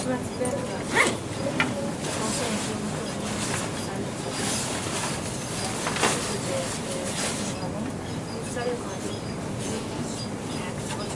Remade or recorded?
recorded